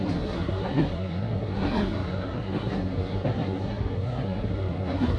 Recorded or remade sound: remade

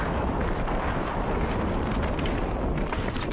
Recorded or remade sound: recorded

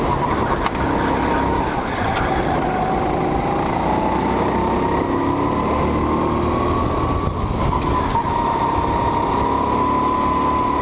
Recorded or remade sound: recorded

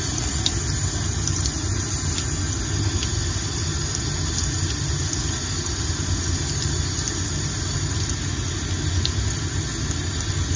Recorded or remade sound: recorded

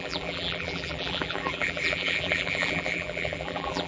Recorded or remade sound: remade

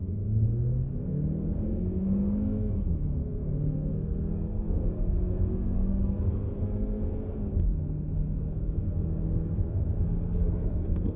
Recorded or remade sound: remade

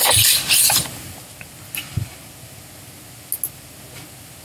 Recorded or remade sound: recorded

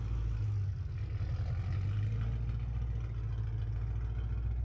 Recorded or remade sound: recorded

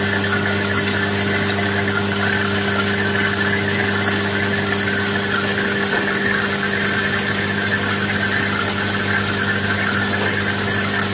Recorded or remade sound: recorded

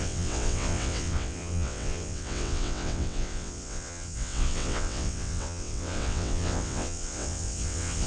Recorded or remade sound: remade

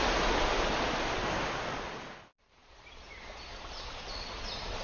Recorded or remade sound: recorded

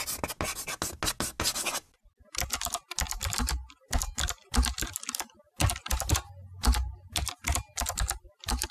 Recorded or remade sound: recorded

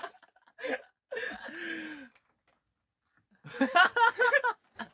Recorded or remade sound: recorded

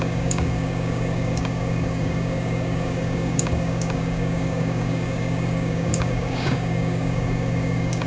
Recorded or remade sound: remade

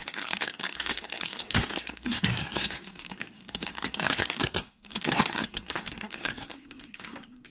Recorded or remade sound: remade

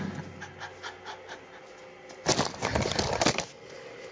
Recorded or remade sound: recorded